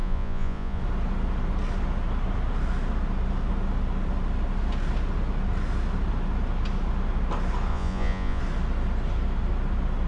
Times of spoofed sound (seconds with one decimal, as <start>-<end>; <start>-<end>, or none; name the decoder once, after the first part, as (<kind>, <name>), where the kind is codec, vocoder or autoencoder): 0.0-0.8 (vocoder, Vocos); 7.7-8.4